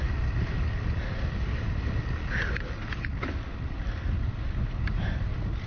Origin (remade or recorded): recorded